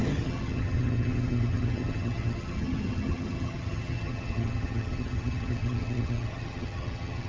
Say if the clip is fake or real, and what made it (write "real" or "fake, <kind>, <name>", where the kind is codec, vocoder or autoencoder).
fake, vocoder, HiFi-GAN